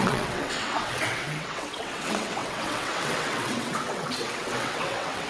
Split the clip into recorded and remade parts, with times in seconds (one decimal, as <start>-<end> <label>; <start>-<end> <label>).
0.0-5.3 remade